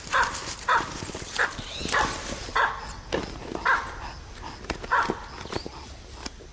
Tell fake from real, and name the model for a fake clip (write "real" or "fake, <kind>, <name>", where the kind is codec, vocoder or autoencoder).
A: real